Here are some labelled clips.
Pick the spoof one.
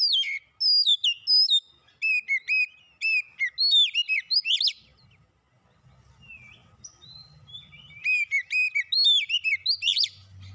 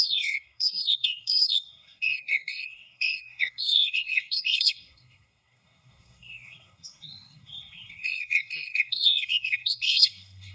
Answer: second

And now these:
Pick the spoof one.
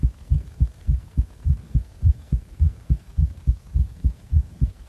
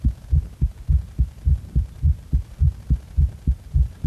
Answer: first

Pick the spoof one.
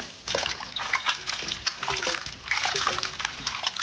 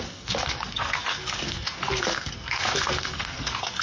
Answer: second